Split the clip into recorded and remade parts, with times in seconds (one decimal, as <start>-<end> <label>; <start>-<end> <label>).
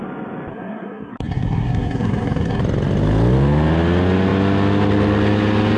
0.0-0.5 recorded; 0.5-2.6 remade; 2.6-5.8 recorded